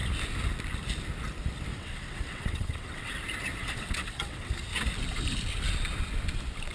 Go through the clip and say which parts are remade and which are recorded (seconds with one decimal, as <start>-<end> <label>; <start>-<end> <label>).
0.0-1.7 recorded; 1.7-3.1 remade; 3.1-3.6 recorded; 3.6-4.5 remade; 4.5-6.7 recorded